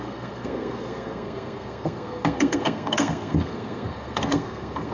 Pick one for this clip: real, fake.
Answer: fake